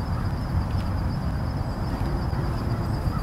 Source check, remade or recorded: remade